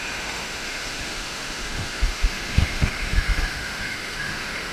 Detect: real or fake fake